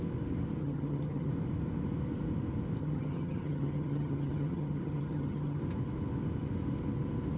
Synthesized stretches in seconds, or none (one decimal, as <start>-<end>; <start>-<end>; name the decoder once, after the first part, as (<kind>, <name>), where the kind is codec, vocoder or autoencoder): 0.6-1.3 (vocoder, HiFi-GAN); 2.8-5.6

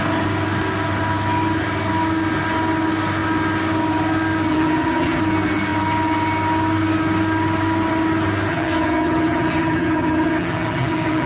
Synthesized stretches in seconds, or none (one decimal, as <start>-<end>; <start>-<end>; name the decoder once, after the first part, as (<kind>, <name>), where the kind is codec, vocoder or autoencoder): 4.5-5.2 (vocoder, HiFi-GAN); 8.5-11.3

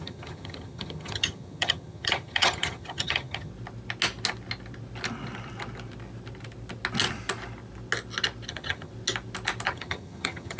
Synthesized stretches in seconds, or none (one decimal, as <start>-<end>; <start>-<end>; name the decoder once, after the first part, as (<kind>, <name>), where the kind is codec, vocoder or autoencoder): 0.0-3.5 (vocoder, HiFi-GAN); 8.5-8.9; 9.7-10.6

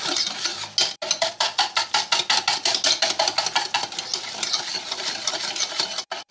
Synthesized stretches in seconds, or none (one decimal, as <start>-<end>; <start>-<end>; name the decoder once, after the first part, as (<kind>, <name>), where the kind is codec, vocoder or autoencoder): none

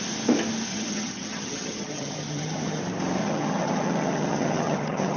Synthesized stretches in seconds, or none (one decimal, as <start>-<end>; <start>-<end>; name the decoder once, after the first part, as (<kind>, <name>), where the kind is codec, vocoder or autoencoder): 0.7-2.8 (vocoder, HiFi-GAN); 3.2-5.2

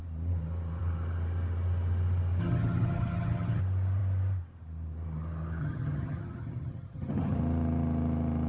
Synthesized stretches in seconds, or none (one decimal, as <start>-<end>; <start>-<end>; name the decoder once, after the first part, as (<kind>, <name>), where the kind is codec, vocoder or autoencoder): 2.4-3.6 (vocoder, HiFi-GAN); 5.6-7.4

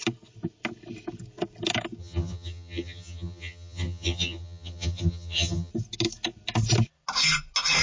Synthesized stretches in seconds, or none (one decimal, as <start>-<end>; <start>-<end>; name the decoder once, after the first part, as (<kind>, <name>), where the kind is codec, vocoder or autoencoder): 2.0-5.7 (vocoder, HiFi-GAN)

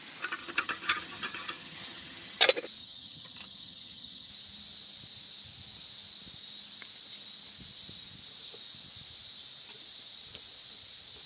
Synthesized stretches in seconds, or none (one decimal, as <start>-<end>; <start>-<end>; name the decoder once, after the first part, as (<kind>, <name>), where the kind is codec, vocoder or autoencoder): 0.4-2.4 (vocoder, HiFi-GAN); 2.8-4.3